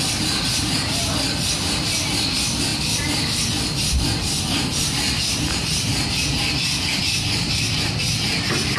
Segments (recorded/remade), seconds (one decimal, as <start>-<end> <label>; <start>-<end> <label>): 0.0-8.8 recorded